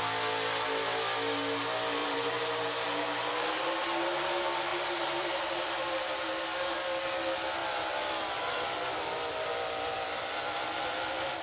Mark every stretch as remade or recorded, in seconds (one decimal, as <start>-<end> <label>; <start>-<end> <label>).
0.0-2.0 recorded; 2.0-3.3 remade; 3.3-4.7 recorded; 4.7-6.3 remade; 6.3-11.4 recorded